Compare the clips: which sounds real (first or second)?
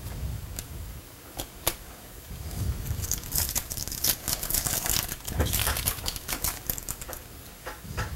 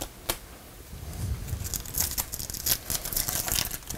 second